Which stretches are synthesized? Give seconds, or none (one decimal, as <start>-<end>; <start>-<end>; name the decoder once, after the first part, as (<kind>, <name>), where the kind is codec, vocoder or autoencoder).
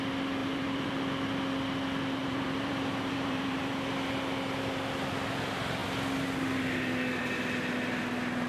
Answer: 0.4-0.9 (vocoder, BigVGAN v2); 2.2-3.7